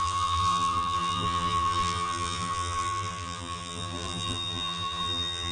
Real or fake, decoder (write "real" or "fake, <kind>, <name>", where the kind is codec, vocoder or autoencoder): fake, vocoder, BigVGAN v2